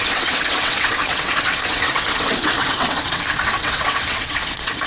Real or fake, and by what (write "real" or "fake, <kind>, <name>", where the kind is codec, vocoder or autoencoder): fake, vocoder, WaveNeXt